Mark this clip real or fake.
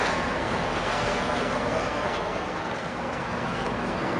fake